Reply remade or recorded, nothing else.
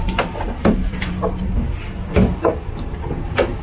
remade